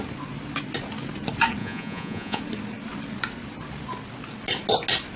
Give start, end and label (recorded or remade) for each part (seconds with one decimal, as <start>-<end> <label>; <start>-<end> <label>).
0.0-1.6 recorded; 1.6-2.4 remade; 2.4-5.2 recorded